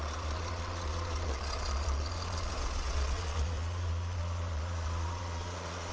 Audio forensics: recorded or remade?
remade